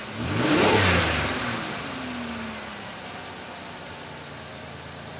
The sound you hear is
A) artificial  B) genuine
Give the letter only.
B